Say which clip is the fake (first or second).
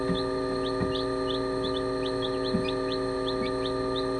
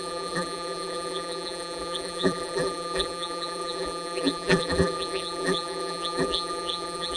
second